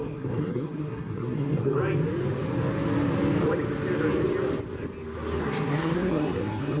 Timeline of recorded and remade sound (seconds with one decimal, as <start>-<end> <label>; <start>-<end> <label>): 0.0-1.8 remade; 1.8-5.4 recorded; 5.4-6.8 remade